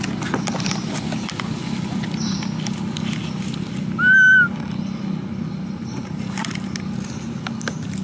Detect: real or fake real